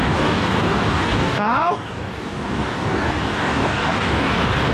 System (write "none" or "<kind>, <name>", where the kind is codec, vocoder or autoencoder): codec, DAC